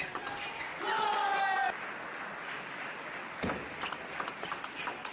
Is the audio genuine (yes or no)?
yes